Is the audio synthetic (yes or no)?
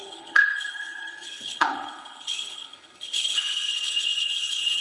yes